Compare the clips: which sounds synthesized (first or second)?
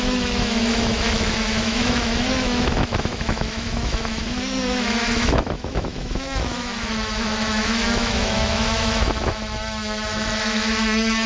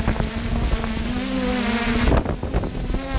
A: first